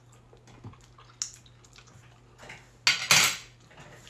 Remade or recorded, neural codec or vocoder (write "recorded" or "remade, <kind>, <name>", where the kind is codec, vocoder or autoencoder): recorded